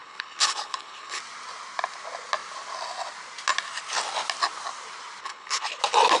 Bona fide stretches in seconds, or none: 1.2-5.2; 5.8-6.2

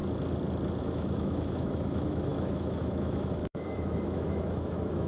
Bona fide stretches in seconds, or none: 0.0-0.8

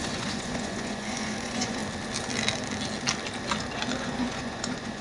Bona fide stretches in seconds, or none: 1.8-4.0

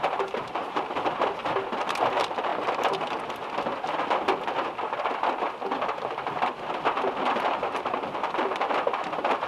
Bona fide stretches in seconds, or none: 1.4-2.0; 2.5-7.3